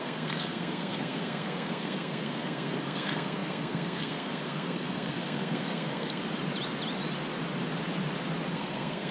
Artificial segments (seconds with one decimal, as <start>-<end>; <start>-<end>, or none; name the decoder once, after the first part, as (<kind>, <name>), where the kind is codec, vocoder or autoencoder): 0.0-6.2 (codec, SNAC); 8.5-9.1